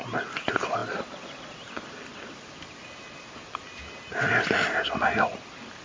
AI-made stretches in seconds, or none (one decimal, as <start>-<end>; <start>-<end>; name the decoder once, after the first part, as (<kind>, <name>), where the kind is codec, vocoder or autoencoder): none